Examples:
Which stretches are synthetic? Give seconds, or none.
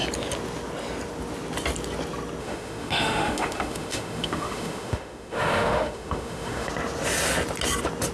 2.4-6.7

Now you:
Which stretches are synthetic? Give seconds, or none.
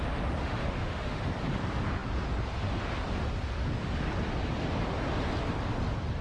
0.4-1.2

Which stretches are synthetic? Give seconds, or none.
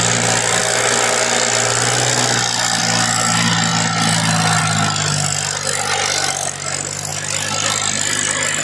none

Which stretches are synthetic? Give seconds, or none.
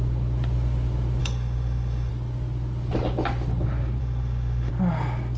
1.2-2.1; 4.0-4.7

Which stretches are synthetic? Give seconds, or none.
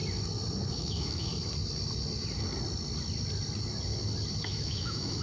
0.7-1.3; 4.4-5.2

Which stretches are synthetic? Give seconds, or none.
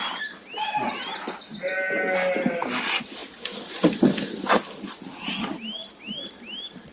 none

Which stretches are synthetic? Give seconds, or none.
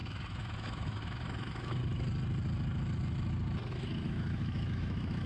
0.0-1.8; 3.7-5.3